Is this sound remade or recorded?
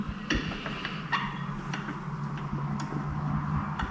recorded